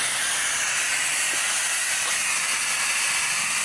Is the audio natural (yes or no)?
yes